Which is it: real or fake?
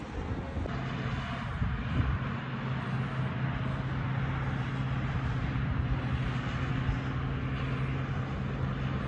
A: real